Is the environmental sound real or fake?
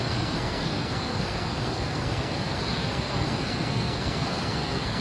fake